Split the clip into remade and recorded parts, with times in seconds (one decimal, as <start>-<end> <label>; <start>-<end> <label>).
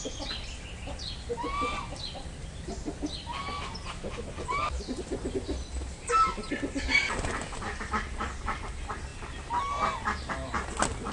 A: 0.0-11.1 recorded